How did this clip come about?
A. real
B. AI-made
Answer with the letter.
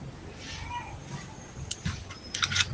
A